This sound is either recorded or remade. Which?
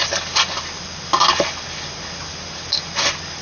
recorded